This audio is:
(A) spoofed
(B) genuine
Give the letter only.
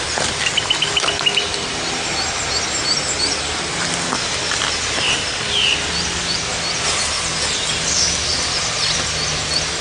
B